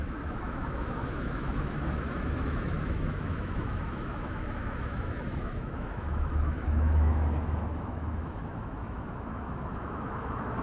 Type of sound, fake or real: fake